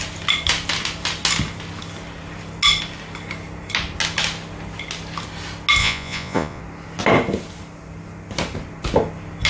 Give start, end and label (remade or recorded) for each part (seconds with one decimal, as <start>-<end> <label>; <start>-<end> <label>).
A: 0.0-5.8 recorded; 5.8-6.6 remade; 6.6-9.5 recorded